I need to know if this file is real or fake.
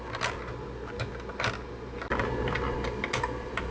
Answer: real